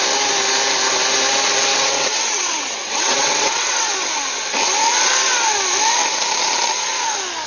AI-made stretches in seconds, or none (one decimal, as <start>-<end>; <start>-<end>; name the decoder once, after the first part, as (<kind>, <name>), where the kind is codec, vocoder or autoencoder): 1.7-3.9 (vocoder, WaveNeXt)